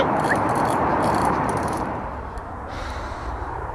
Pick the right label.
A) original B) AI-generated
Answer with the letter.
B